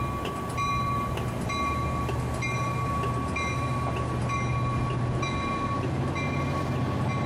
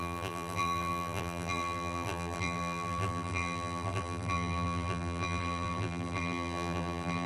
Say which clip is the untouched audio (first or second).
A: first